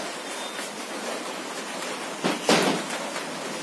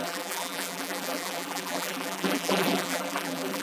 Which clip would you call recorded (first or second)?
first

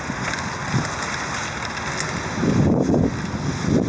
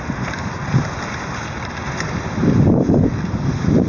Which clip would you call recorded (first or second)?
first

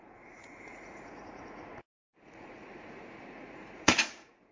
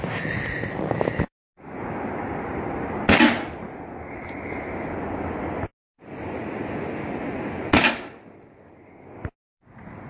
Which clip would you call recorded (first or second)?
second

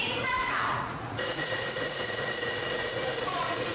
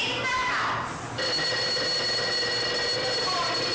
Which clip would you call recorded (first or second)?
second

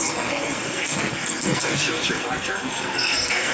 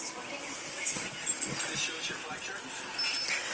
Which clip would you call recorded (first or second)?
second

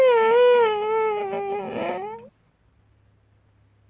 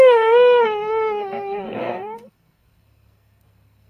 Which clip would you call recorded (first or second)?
first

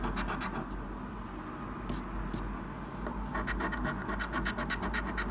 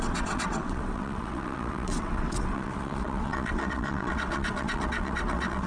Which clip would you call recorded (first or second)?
first